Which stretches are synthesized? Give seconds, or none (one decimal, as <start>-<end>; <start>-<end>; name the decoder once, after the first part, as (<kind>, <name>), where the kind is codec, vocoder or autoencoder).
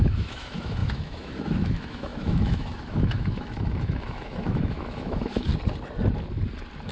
0.0-5.5 (autoencoder, DAC-VAE)